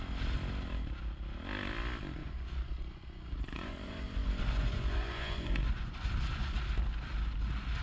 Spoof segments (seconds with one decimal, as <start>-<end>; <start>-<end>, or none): 2.2-6.5